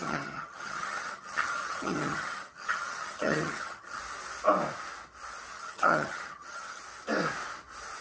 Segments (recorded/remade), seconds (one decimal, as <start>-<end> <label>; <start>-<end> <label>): 0.0-4.0 remade; 4.0-5.5 recorded; 5.5-6.8 remade; 6.8-8.0 recorded